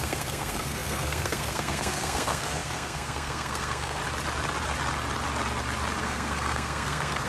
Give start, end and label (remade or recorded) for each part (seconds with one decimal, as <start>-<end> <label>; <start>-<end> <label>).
0.0-4.0 remade; 4.0-6.0 recorded; 6.0-7.3 remade